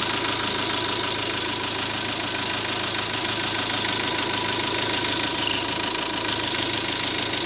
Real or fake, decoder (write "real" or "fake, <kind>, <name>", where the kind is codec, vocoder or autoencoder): real